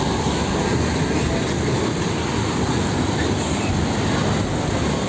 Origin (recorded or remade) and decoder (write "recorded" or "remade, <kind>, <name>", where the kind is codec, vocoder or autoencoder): recorded